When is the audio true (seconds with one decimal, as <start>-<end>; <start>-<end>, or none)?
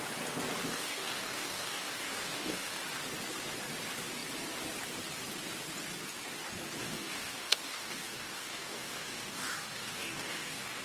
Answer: 0.0-0.7; 2.8-6.8